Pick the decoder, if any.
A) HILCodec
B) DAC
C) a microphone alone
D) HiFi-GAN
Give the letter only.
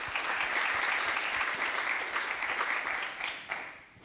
C